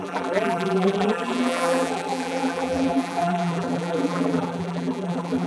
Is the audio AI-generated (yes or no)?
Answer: yes